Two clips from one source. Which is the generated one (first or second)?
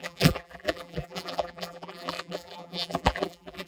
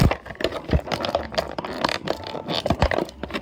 first